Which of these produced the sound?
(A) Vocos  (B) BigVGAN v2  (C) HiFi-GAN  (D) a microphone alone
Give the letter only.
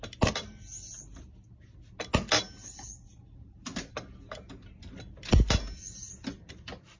D